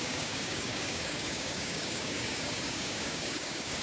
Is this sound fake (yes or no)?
yes